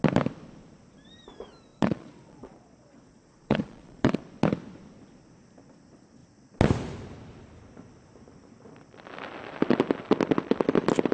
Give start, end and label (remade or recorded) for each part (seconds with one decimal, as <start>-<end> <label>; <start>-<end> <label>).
0.0-1.7 recorded; 1.7-4.2 remade; 4.2-11.1 recorded